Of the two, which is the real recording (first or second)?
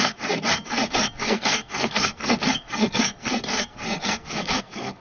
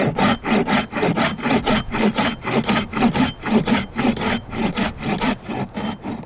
second